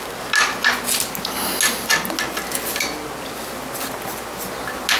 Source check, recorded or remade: recorded